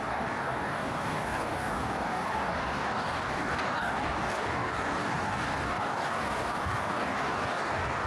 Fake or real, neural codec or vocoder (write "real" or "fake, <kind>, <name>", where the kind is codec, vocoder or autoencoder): fake, codec, DAC